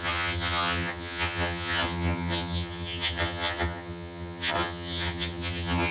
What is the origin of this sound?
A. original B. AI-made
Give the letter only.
B